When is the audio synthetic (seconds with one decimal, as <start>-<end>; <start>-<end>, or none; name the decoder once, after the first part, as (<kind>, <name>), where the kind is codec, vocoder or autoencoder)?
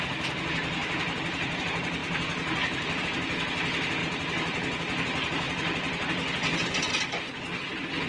none